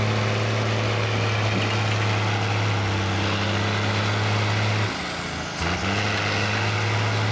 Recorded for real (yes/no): yes